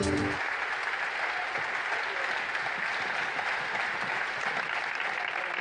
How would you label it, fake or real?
real